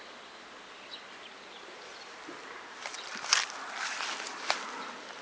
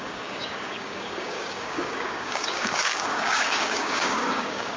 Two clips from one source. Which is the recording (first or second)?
first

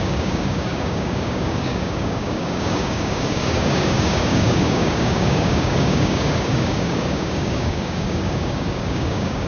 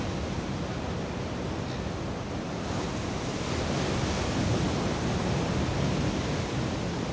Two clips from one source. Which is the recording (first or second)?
second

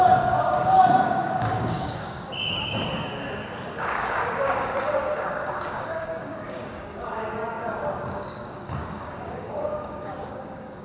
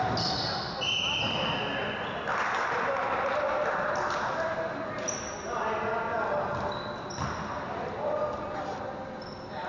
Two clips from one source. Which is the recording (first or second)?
second